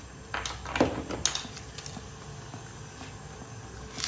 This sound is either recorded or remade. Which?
recorded